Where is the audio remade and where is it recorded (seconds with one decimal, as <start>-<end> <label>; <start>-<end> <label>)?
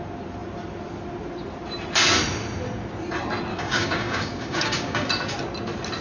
0.0-3.5 recorded; 3.5-5.1 remade; 5.1-6.0 recorded